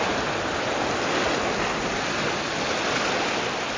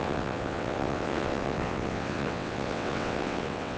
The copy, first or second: second